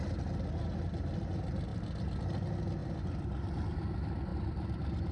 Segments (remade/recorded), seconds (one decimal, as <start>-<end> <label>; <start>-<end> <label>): 0.0-2.8 recorded; 2.8-3.5 remade; 3.5-4.3 recorded; 4.3-5.1 remade